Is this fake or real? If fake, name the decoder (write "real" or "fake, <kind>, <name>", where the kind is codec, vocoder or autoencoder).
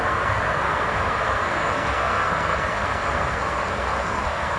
fake, codec, SNAC